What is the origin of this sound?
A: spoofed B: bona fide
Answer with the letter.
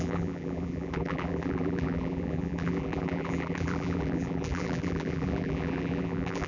A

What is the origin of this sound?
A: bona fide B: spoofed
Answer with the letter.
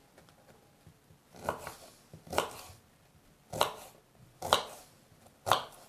A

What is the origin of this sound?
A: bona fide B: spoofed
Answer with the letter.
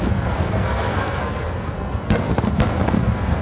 B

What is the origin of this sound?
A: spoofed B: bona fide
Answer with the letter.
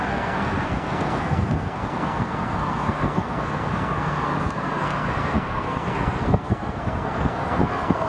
A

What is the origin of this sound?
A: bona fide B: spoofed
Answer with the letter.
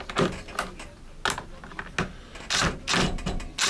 A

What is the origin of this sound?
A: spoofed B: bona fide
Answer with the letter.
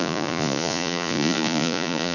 A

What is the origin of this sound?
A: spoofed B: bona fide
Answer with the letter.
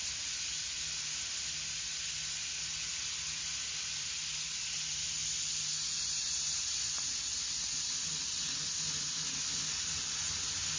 B